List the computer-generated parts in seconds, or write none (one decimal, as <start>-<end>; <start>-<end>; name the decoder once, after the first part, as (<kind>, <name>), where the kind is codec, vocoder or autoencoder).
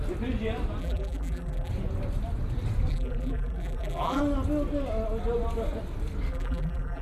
0.8-1.7 (vocoder, BigVGAN v2); 2.9-4.2; 6.3-7.0